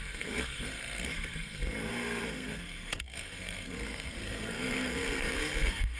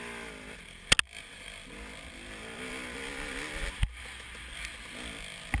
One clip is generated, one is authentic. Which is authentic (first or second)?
second